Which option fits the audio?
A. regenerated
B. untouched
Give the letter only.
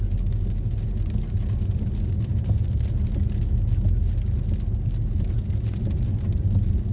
B